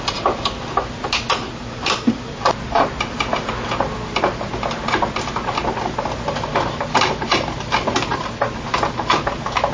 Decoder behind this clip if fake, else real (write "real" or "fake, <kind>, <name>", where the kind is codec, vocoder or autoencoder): real